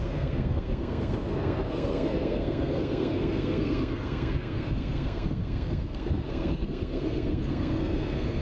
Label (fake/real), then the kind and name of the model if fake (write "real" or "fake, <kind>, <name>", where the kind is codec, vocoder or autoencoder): fake, codec, SNAC